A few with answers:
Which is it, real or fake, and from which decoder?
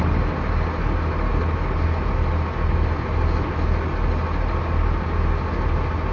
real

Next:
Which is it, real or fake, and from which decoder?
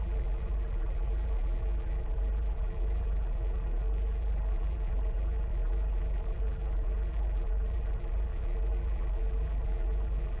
fake, vocoder, BigVGAN v2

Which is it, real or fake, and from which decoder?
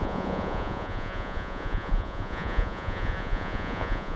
fake, vocoder, Vocos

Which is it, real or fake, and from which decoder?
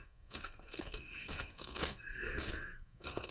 fake, codec, SNAC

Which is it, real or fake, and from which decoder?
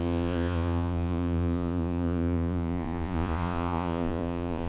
fake, vocoder, Vocos